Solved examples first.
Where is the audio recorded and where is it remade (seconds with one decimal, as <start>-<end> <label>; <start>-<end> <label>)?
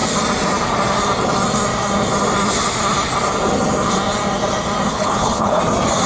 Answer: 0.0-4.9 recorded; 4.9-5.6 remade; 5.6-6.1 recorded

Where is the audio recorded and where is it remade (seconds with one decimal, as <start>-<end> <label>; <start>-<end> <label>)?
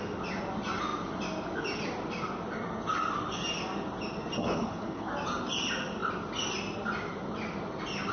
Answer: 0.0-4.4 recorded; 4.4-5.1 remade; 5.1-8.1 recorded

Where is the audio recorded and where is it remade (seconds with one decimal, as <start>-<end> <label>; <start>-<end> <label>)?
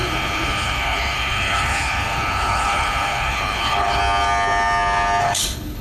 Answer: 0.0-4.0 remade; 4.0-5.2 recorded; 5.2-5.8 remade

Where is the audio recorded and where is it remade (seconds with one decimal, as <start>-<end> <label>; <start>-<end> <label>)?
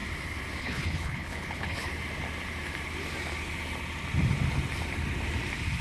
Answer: 0.0-0.6 recorded; 0.6-1.9 remade; 1.9-5.8 recorded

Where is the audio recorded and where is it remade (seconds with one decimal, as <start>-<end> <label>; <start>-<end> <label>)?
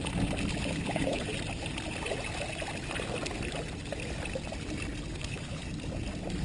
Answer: 0.0-0.6 recorded; 0.6-1.3 remade; 1.3-5.1 recorded; 5.1-5.6 remade; 5.6-6.4 recorded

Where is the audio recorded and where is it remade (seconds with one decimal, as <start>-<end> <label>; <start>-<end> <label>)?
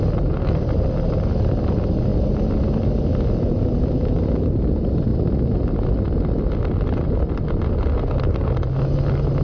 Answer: 0.0-9.4 recorded